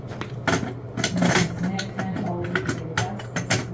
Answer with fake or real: real